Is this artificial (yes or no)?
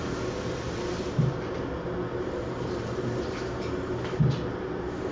no